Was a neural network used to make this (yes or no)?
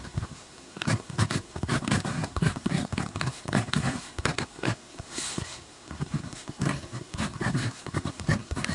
yes